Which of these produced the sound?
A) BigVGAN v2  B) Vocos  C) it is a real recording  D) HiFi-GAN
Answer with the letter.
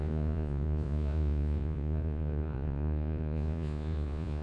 B